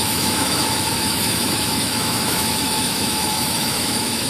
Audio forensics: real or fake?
fake